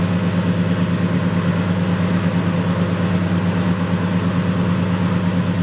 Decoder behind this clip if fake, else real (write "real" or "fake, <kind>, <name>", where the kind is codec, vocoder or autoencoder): real